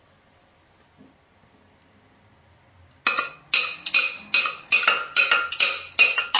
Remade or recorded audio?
recorded